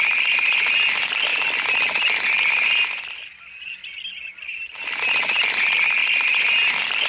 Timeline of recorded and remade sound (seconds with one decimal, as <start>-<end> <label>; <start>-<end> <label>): 0.0-7.1 recorded